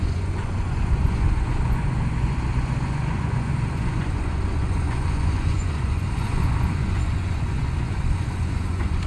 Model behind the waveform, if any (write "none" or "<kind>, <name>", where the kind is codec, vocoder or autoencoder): vocoder, Vocos